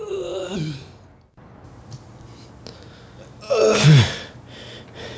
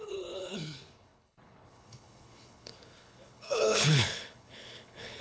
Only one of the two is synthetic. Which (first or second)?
second